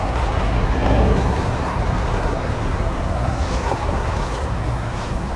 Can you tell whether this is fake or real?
fake